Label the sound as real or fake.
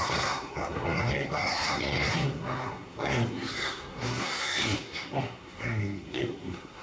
fake